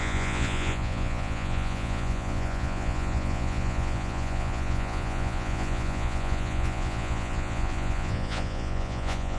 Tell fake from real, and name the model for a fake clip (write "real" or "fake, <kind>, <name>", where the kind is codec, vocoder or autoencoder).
fake, vocoder, Vocos